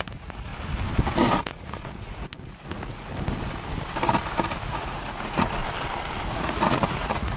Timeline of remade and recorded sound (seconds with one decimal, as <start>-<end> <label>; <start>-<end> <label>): 0.0-0.5 remade; 0.5-1.4 recorded; 1.4-3.1 remade; 3.1-4.7 recorded; 4.7-5.6 remade; 5.6-6.3 recorded; 6.3-7.4 remade

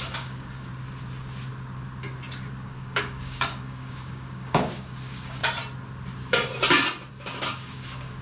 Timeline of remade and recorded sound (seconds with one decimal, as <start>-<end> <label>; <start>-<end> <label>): 0.0-0.7 remade; 0.7-2.5 recorded; 2.5-5.4 remade; 5.4-7.1 recorded; 7.1-8.2 remade

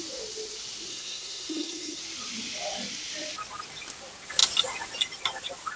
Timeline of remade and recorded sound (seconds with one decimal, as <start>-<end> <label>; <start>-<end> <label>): 0.0-0.9 recorded; 0.9-2.0 remade; 2.0-5.8 recorded

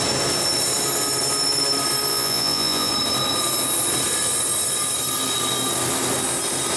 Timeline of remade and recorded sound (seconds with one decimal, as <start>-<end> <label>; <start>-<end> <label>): 0.0-2.1 recorded; 2.1-2.9 remade; 2.9-6.8 recorded

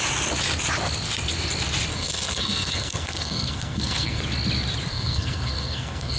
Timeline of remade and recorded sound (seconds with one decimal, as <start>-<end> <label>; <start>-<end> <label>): 0.0-1.9 recorded; 1.9-4.2 remade; 4.2-4.9 recorded; 4.9-6.2 remade

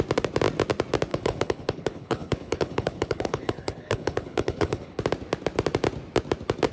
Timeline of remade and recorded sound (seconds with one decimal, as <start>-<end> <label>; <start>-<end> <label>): 0.0-1.1 recorded; 1.1-5.0 remade; 5.0-6.7 recorded

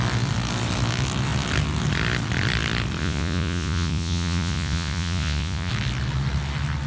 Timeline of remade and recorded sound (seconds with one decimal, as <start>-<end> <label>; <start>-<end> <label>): 0.0-3.0 recorded; 3.0-5.7 remade; 5.7-6.9 recorded

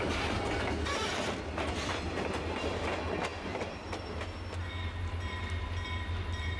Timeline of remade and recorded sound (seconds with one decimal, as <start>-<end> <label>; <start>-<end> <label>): 0.0-1.0 recorded; 1.0-2.1 remade; 2.1-3.3 recorded; 3.3-4.2 remade; 4.2-6.6 recorded